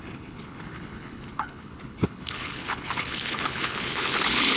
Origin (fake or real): fake